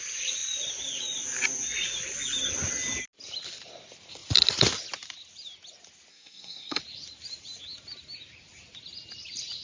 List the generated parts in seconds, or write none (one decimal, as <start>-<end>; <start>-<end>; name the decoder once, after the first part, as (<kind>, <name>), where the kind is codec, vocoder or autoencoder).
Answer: 6.1-6.8 (codec, SNAC)